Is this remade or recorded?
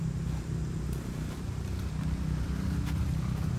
recorded